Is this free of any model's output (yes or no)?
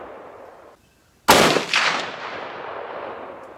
yes